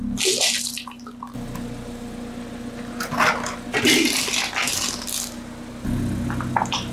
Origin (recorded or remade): recorded